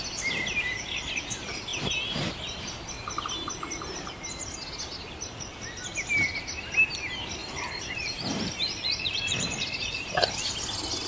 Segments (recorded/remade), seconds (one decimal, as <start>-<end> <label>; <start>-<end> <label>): 0.0-7.4 recorded; 7.4-10.5 remade; 10.5-11.1 recorded